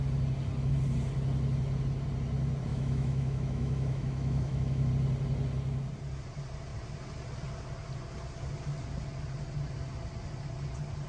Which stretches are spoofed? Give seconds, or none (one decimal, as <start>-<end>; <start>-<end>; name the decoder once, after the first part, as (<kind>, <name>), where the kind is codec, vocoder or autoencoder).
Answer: 2.7-4.9 (autoencoder, DAC-VAE)